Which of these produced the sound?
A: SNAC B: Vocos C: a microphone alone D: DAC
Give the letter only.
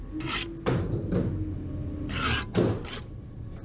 C